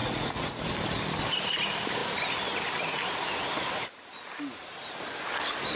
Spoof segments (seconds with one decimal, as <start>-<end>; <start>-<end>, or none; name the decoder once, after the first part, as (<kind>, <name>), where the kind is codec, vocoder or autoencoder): 0.0-0.7 (vocoder, Vocos)

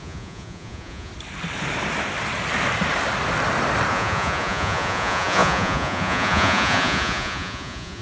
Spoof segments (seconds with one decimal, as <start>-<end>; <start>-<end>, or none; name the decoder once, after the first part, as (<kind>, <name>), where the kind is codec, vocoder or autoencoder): 0.0-1.1 (vocoder, Vocos); 3.9-8.0

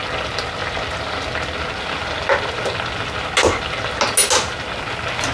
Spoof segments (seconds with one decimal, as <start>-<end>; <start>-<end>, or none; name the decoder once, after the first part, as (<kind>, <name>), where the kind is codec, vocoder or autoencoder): none

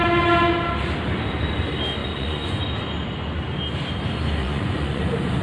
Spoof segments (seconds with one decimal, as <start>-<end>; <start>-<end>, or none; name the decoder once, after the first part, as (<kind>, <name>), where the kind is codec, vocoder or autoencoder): 2.0-2.6 (vocoder, Vocos); 4.4-5.0